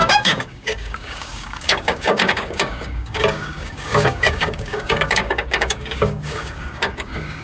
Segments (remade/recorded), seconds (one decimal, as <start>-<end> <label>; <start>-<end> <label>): 0.0-7.4 remade